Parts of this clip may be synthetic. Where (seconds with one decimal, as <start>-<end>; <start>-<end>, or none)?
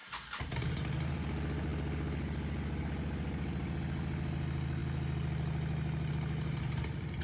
0.0-0.7